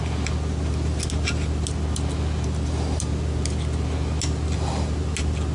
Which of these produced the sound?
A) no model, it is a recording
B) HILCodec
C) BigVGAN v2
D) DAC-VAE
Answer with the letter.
A